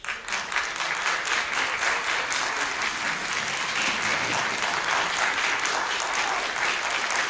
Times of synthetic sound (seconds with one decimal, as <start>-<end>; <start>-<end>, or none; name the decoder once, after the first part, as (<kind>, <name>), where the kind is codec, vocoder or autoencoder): none